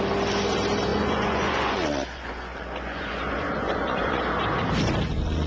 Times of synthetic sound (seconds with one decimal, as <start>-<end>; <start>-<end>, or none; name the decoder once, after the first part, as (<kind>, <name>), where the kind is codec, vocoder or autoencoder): 0.9-4.2 (vocoder, Vocos)